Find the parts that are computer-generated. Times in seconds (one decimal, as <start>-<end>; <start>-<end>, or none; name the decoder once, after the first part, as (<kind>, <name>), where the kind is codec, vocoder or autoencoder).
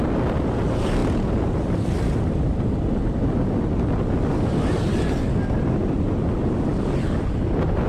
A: none